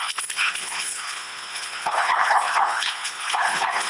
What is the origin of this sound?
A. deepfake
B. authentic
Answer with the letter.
A